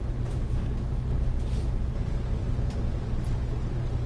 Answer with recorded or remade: recorded